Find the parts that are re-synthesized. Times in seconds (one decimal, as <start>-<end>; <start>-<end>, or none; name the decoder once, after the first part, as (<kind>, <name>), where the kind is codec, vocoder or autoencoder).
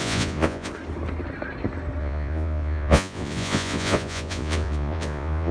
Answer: 0.0-0.7 (vocoder, Vocos); 2.0-5.5